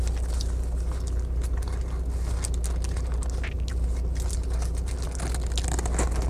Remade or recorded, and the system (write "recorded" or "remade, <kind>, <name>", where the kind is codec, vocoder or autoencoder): recorded